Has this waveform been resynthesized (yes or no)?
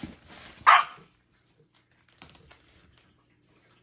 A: no